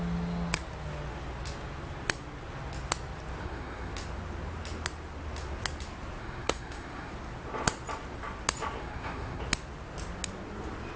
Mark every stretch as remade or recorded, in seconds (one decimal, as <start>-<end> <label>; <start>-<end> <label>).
0.0-3.4 recorded; 3.4-3.9 remade; 3.9-6.2 recorded; 6.2-7.1 remade; 7.1-8.8 recorded; 8.8-9.4 remade; 9.4-11.0 recorded